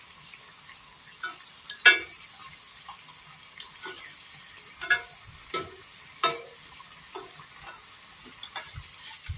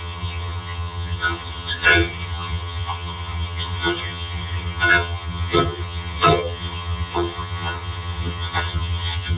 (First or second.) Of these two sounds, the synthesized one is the second